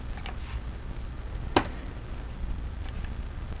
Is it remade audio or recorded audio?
recorded